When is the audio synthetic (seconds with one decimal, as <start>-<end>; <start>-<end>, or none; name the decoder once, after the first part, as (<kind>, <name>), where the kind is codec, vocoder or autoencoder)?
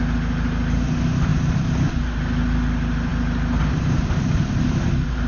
none